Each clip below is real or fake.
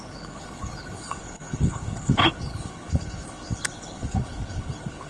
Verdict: fake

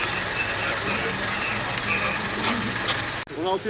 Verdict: real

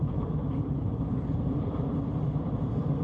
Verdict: fake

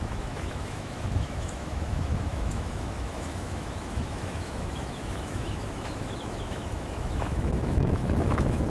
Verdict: fake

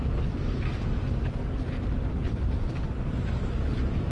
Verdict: real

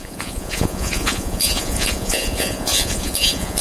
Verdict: fake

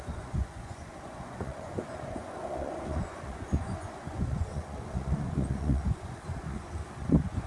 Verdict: fake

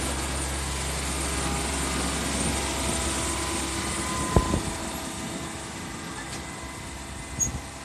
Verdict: real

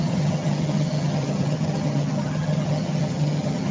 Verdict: fake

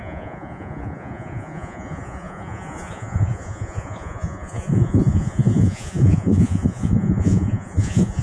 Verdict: fake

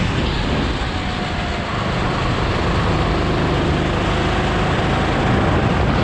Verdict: real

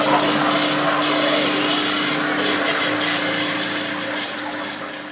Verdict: real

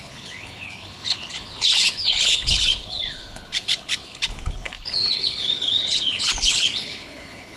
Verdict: fake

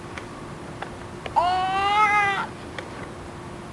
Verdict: real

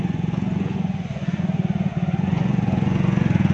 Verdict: fake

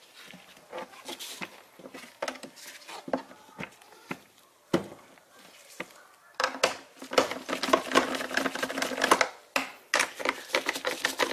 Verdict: real